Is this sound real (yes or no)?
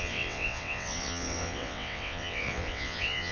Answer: no